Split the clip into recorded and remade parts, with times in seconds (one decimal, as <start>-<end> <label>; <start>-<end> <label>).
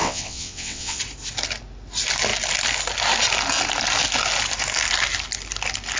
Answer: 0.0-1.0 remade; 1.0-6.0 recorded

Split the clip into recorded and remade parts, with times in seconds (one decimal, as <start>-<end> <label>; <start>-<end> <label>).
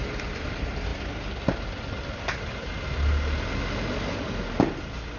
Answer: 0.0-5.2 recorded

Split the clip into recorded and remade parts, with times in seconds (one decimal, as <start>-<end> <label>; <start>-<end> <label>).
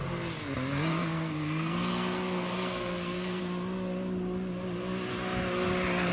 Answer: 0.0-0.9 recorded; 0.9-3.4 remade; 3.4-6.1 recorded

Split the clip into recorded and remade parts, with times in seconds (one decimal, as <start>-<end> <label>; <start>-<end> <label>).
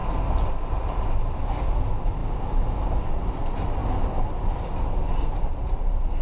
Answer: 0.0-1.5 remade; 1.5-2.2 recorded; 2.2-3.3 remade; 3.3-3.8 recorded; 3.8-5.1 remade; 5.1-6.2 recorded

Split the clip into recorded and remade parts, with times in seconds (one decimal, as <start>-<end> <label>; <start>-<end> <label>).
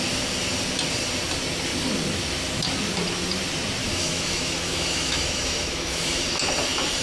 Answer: 0.0-3.8 recorded; 3.8-6.3 remade; 6.3-7.0 recorded